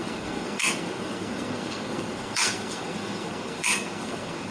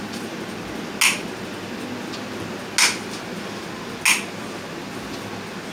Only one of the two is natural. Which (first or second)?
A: second